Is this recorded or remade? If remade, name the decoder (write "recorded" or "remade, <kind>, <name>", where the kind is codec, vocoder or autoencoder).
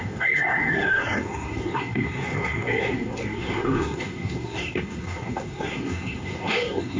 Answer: remade, codec, SNAC